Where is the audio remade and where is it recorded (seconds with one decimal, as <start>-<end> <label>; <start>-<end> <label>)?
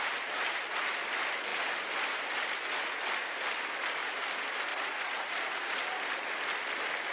0.0-4.7 recorded; 4.7-5.3 remade; 5.3-7.1 recorded